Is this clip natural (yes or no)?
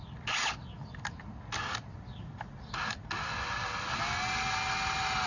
yes